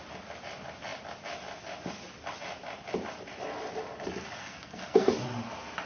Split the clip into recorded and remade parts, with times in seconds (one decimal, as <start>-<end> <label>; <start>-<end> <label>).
0.0-4.4 recorded; 4.4-5.1 remade; 5.1-5.9 recorded